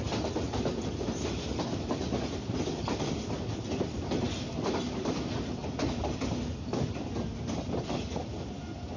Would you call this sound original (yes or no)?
yes